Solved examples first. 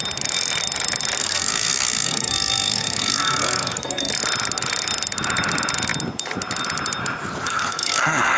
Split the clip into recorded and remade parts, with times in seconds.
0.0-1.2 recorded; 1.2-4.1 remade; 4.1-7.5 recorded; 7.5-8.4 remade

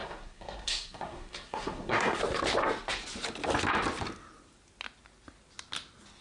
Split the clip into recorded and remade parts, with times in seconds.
0.0-2.2 remade; 2.2-6.2 recorded